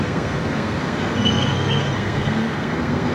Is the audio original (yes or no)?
no